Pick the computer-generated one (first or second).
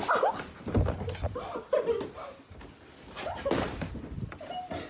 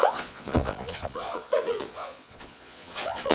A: second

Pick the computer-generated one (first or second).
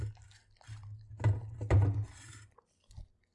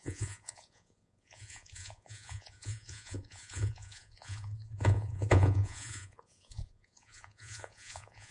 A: second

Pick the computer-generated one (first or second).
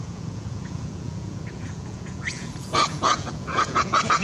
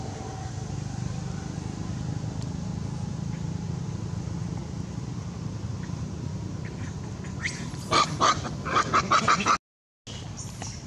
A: first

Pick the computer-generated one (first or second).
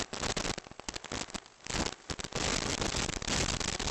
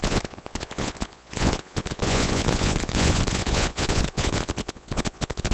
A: second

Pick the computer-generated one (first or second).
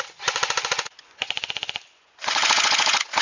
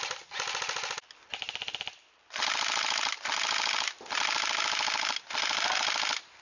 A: first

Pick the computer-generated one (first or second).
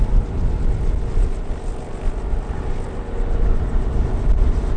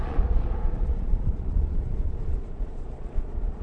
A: second